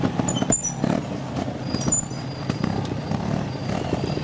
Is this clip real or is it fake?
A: real